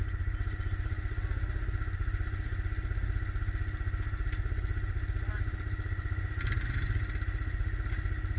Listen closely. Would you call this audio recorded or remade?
recorded